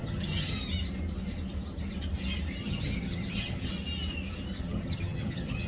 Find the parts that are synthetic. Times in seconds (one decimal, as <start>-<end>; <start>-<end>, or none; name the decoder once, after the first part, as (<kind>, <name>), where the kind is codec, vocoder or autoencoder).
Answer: 0.0-0.6 (vocoder, HiFi-GAN); 2.6-3.7; 4.6-5.7